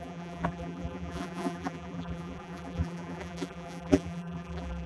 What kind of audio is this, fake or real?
fake